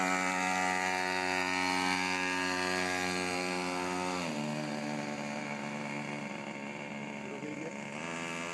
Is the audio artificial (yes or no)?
no